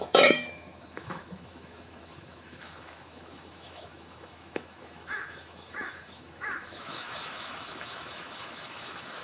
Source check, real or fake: fake